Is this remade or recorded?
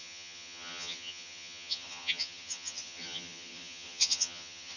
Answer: remade